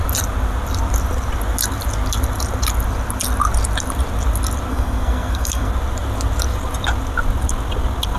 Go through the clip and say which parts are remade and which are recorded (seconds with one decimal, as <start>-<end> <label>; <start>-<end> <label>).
0.0-4.7 recorded; 4.7-5.7 remade; 5.7-8.2 recorded